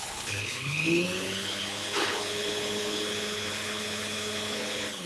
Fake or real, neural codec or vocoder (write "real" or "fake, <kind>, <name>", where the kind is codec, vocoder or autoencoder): fake, codec, HILCodec